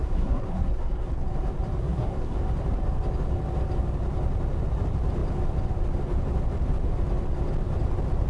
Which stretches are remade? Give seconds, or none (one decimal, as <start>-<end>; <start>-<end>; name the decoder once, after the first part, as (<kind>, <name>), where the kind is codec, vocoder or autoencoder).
0.0-1.1 (codec, SNAC); 1.8-2.4